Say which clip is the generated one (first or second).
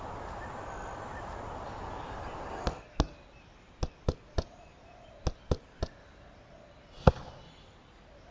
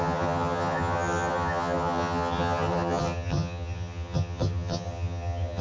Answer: second